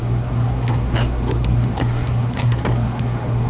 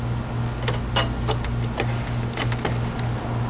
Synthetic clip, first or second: first